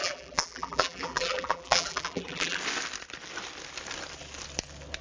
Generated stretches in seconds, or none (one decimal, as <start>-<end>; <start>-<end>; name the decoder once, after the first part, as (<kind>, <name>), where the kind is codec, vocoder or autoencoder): 0.0-2.6 (vocoder, BigVGAN v2)